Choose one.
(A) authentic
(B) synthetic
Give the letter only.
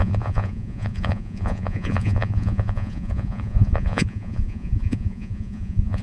B